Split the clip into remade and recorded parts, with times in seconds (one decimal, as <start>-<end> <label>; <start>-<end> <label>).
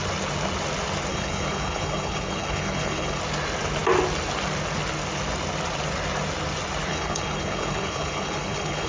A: 0.0-1.1 recorded; 1.1-3.2 remade; 3.2-6.9 recorded; 6.9-8.9 remade